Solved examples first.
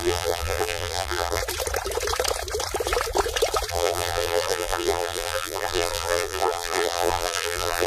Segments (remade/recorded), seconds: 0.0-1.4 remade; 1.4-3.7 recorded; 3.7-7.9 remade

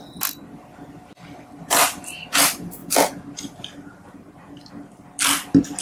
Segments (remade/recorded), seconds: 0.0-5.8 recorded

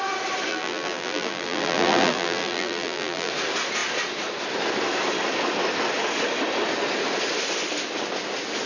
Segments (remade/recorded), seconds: 0.0-0.5 recorded; 0.5-3.3 remade; 3.3-8.7 recorded

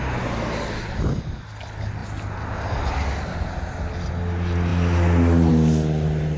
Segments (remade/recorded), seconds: 0.0-6.4 recorded